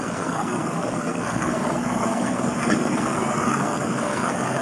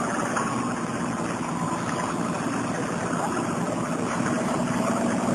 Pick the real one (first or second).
second